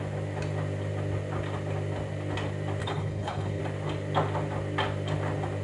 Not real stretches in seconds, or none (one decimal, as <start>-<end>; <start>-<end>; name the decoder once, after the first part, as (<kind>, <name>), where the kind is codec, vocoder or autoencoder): 2.8-3.6 (codec, HILCodec)